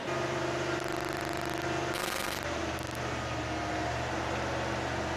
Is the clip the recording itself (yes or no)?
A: yes